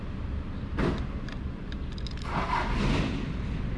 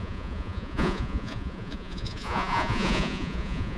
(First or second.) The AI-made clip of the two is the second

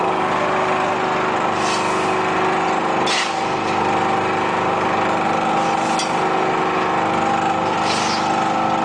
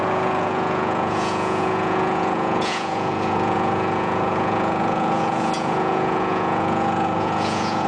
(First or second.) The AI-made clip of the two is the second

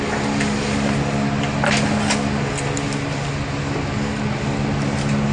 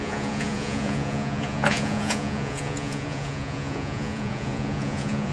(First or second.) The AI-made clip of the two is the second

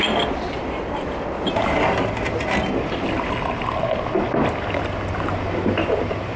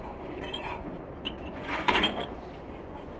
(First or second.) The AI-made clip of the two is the second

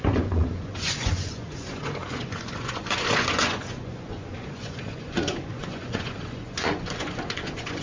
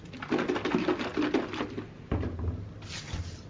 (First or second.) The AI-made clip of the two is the first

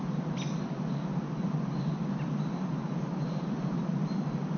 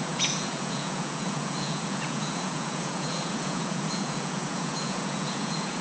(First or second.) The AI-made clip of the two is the second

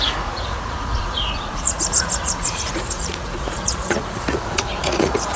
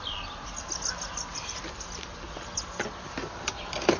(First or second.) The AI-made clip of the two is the first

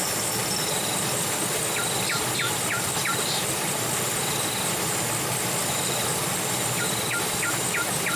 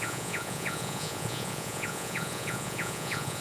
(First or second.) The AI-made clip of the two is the second